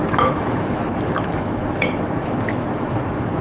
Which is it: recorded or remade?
remade